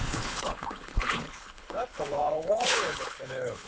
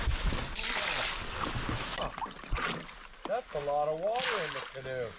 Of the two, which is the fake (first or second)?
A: first